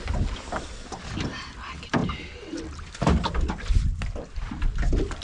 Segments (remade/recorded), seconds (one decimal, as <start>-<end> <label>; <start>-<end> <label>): 0.0-5.2 recorded